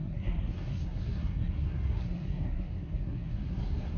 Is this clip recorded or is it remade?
remade